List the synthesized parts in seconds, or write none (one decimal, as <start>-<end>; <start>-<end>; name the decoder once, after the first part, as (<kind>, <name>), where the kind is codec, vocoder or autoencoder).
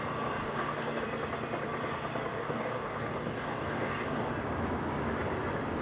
0.4-1.0 (codec, DAC); 2.3-4.3